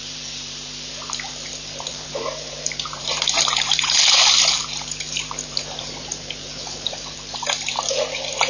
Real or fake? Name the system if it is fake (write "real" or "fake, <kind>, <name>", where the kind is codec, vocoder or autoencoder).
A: fake, vocoder, BigVGAN v2